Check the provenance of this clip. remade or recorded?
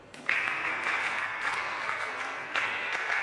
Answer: remade